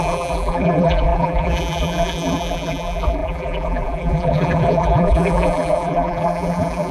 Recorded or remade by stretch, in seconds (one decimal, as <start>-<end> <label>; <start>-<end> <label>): 0.0-6.9 remade